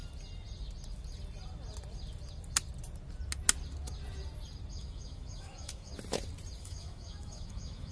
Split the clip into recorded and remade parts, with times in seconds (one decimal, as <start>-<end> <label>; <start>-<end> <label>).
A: 0.0-4.7 recorded; 4.7-5.9 remade; 5.9-6.6 recorded; 6.6-7.9 remade